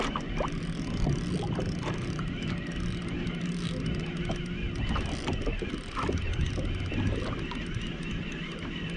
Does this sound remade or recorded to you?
recorded